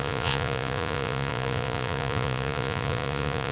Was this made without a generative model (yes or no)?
no